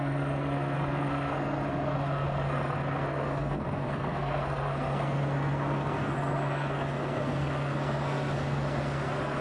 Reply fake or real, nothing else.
fake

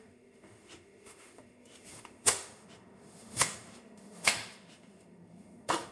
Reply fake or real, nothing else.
fake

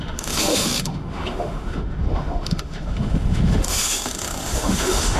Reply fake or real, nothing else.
fake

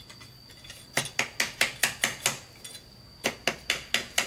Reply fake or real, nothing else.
real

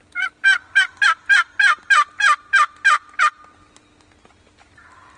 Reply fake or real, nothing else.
real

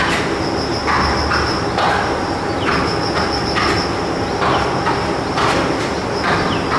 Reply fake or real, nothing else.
real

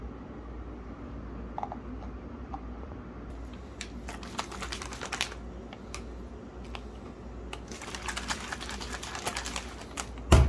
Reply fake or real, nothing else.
real